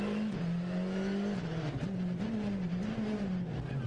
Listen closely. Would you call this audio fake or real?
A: real